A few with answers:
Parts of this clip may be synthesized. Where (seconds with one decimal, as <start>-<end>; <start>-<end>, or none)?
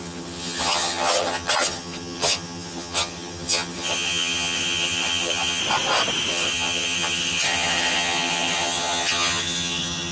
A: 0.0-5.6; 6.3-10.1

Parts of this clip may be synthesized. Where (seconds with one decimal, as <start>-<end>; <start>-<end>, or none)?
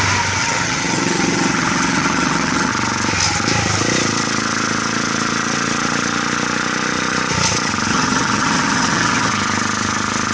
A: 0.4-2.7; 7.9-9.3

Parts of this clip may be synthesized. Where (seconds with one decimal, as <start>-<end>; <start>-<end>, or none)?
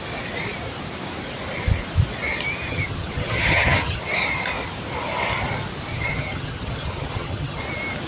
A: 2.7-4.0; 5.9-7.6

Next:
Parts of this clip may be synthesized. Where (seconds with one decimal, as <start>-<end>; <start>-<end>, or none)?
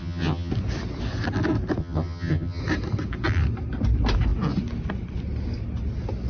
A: 0.0-0.5; 1.8-2.6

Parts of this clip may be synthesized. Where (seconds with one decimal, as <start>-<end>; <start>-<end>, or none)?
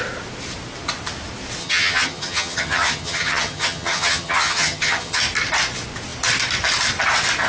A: 1.6-5.2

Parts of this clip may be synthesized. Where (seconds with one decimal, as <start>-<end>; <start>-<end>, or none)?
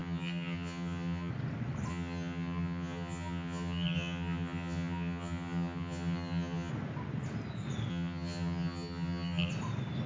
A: 0.0-1.3; 1.9-6.7; 7.9-9.5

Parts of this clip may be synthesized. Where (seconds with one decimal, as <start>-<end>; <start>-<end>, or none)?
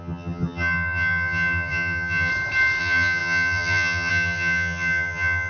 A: 0.0-2.3; 2.8-5.5